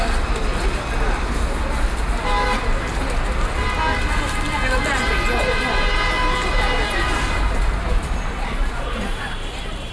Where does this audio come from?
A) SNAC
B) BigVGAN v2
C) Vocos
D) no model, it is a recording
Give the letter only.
D